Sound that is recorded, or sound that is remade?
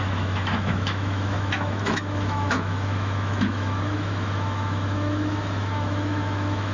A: remade